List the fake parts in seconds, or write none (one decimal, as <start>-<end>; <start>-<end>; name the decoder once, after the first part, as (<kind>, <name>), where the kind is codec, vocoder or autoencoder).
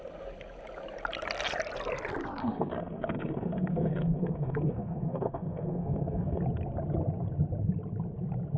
2.4-6.4 (codec, SNAC)